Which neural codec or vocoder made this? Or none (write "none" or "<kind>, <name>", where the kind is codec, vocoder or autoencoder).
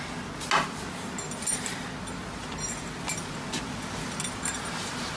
none